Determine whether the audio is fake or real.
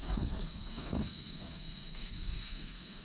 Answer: fake